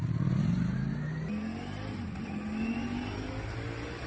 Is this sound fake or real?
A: real